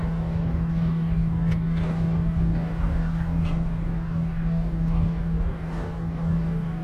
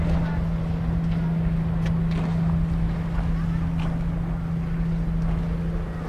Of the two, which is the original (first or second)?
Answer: second